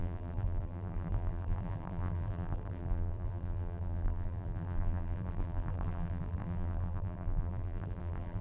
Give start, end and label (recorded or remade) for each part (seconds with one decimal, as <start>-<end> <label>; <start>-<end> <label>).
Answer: 0.0-8.4 remade